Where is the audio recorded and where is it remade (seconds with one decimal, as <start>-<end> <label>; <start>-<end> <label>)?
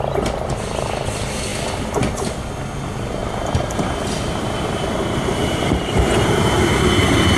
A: 0.0-3.2 recorded; 3.2-6.0 remade; 6.0-7.4 recorded